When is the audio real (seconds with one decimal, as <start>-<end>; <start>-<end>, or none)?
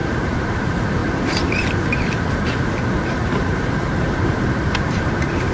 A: none